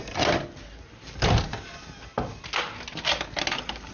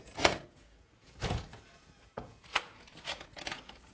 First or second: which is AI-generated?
second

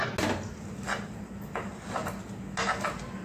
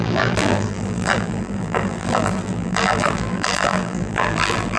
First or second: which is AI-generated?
second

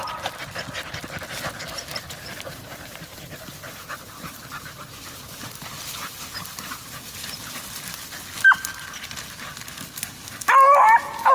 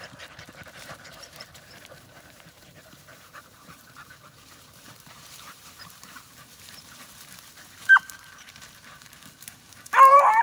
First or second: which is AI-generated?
second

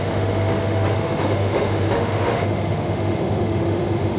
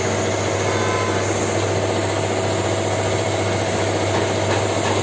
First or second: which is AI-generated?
first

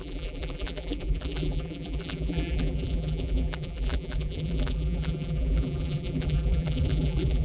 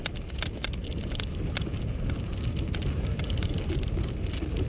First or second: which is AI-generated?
first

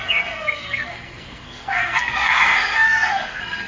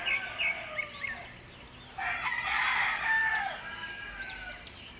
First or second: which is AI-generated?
first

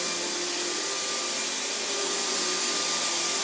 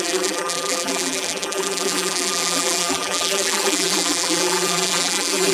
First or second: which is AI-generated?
second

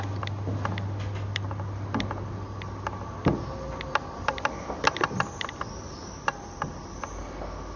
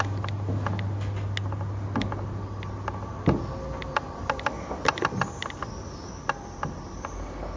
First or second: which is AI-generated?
first